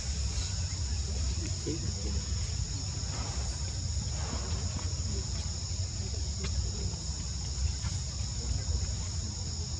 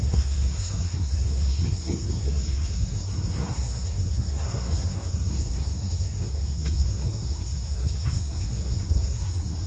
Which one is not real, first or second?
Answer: second